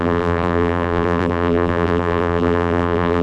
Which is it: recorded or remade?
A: remade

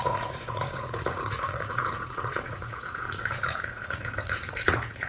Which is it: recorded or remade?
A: remade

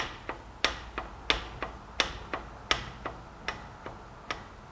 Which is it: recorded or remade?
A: recorded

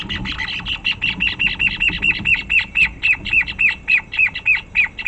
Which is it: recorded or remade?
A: recorded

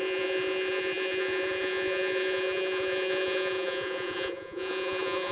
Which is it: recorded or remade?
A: remade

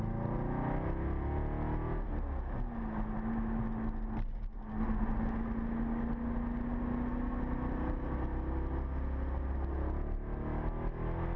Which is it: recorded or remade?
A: recorded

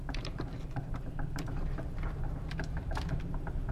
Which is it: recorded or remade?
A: remade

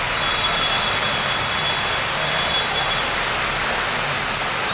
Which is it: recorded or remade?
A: recorded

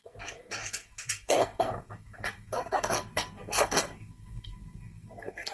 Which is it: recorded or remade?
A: remade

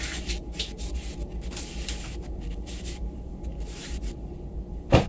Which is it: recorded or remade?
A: remade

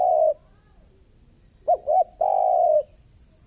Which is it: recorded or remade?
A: remade